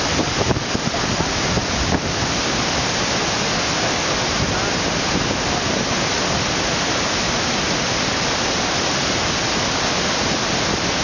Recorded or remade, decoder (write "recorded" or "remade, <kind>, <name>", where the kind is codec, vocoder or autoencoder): recorded